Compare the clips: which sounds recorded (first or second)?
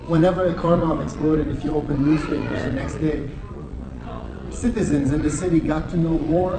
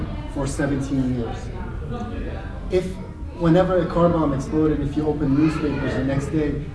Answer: second